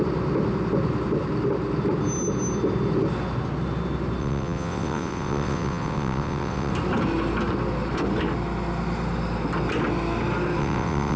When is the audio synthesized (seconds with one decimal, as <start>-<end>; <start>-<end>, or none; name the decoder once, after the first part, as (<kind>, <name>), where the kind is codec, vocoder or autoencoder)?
4.2-6.7 (vocoder, WaveNeXt); 10.6-11.2